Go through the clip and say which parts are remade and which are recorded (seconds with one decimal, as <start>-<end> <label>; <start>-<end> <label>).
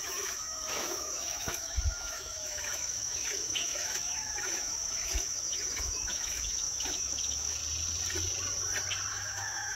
0.0-7.6 remade; 7.6-9.1 recorded; 9.1-9.8 remade